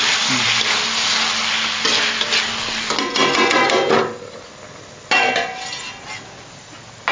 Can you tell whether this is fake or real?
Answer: real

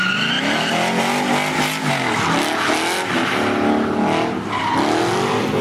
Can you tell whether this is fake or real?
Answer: real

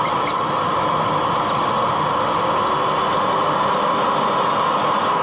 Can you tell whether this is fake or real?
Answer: real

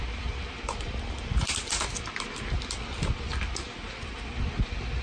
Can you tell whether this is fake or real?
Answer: real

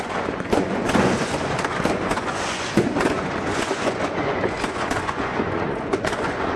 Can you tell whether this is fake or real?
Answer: fake